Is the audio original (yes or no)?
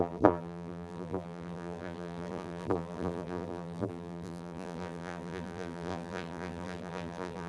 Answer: no